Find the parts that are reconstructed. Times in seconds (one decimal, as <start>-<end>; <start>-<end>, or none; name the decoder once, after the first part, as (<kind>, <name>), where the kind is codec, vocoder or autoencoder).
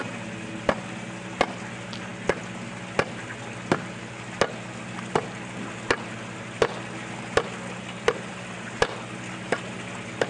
none